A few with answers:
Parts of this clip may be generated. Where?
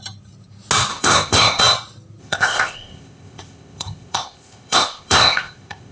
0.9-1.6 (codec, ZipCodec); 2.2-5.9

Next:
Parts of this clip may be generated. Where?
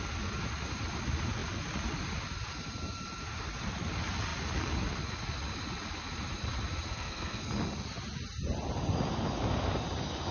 6.9-7.4 (codec, SNAC)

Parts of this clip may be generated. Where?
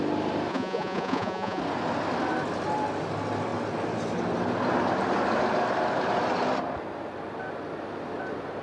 0.5-1.6 (vocoder, Vocos)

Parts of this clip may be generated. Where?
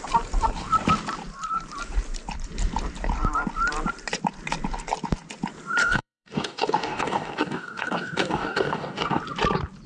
5.8-9.2 (codec, DAC)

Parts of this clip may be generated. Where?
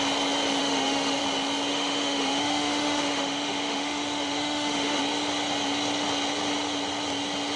0.6-1.2 (autoencoder, DAC-VAE); 1.7-5.0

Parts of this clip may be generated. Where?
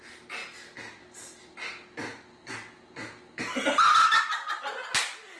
none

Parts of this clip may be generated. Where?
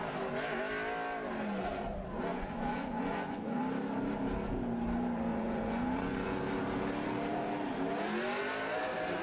2.3-3.6 (vocoder, Vocos); 5.3-6.4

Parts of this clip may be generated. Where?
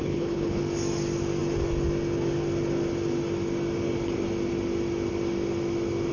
0.0-0.6 (codec, HILCodec)